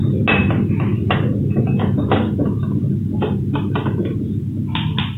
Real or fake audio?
real